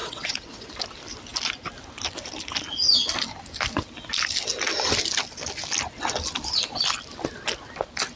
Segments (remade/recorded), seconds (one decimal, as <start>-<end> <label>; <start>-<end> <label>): 0.0-0.7 remade; 0.7-8.2 recorded